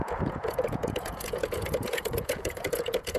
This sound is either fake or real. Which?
fake